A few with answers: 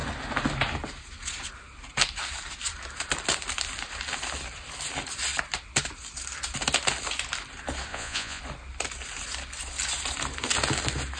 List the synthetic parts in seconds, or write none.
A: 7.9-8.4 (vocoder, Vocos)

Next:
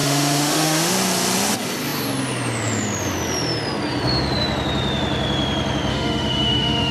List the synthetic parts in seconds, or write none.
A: 0.0-0.9 (autoencoder, DAC-VAE); 5.9-6.9

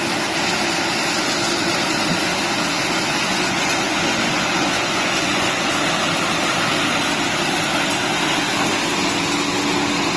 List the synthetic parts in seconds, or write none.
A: 3.3-5.7 (vocoder, Vocos)

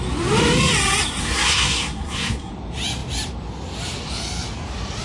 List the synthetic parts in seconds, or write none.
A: 1.2-2.5 (codec, SNAC)

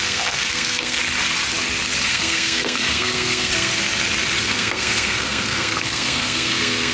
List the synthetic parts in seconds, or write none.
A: 0.0-1.0 (codec, SNAC); 2.1-3.7; 4.4-6.9

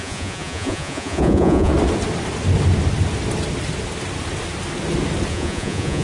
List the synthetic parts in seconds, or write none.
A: 0.0-1.7 (vocoder, Vocos); 5.3-6.0

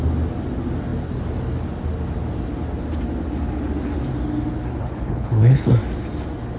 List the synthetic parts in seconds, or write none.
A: 4.8-5.7 (codec, HILCodec)

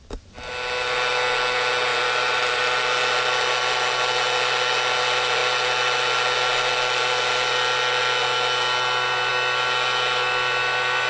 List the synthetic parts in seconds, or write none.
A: 1.9-2.6 (vocoder, BigVGAN v2)